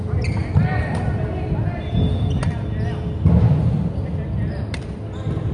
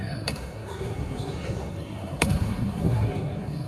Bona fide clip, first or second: first